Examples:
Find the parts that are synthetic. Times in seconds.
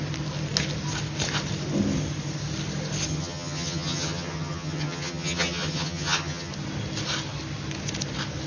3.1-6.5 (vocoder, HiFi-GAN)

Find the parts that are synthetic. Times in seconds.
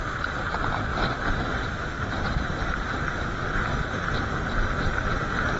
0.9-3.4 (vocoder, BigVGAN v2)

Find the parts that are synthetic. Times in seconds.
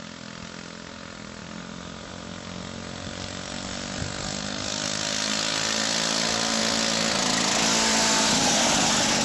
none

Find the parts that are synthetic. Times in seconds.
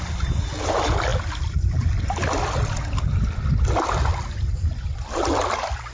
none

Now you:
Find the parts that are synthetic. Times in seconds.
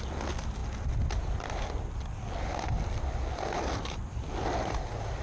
none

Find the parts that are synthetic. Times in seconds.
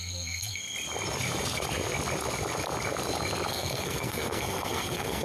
0.0-0.6 (codec, SNAC); 3.5-5.2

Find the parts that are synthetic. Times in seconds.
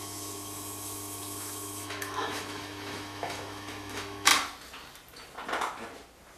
0.0-4.3 (autoencoder, DAC-VAE)